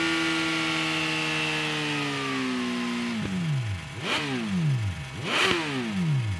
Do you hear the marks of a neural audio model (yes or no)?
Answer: no